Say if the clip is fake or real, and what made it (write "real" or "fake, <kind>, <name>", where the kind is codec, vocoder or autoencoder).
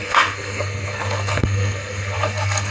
fake, codec, SNAC